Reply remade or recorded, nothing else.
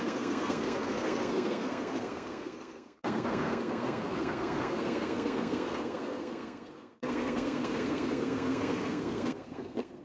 remade